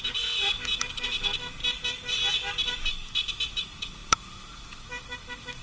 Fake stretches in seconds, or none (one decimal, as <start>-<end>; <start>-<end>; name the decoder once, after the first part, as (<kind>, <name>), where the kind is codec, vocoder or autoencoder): 0.0-1.6 (autoencoder, DAC-VAE); 2.9-5.6